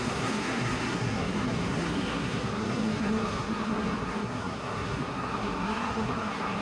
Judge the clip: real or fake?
fake